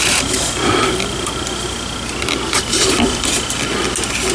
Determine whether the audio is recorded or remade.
recorded